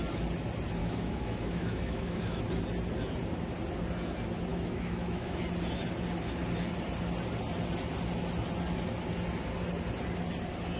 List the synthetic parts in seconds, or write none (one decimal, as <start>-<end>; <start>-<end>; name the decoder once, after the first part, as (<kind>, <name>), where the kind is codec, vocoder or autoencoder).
0.8-2.4 (autoencoder, DAC-VAE); 4.5-5.4